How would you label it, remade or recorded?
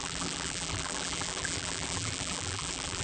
remade